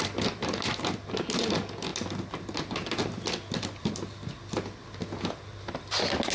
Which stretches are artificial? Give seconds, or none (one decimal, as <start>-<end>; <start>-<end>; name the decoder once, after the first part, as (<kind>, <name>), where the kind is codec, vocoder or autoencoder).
none